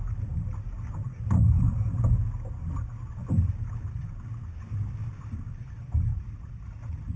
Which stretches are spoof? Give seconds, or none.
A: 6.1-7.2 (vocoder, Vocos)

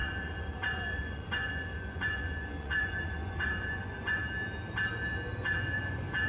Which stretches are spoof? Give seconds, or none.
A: 0.0-4.2 (vocoder, Vocos); 5.4-6.3